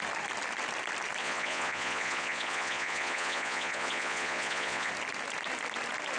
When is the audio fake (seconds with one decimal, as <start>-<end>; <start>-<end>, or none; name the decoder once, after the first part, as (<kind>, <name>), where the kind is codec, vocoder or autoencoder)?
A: 1.2-4.9 (vocoder, Vocos)